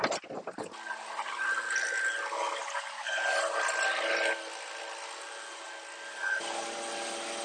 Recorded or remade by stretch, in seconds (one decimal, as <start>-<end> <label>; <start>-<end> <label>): 0.0-7.4 recorded